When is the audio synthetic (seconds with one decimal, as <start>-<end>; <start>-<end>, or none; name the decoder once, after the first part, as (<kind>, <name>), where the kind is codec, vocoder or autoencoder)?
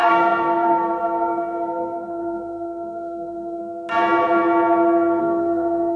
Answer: 0.0-3.6 (codec, SNAC); 5.2-6.0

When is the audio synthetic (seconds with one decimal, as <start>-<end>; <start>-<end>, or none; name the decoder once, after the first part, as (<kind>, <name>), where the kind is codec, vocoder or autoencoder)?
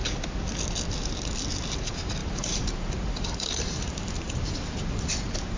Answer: 2.2-5.6 (vocoder, BigVGAN v2)